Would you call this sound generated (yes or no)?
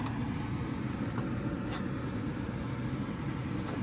no